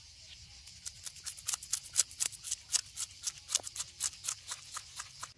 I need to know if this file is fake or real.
real